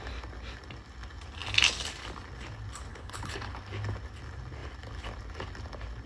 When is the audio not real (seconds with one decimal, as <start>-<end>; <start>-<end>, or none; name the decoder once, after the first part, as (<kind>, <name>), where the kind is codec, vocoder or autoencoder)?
2.9-3.5 (codec, HILCodec)